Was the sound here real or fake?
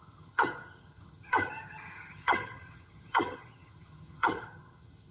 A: fake